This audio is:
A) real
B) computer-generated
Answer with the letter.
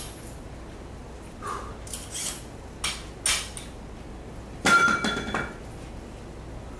A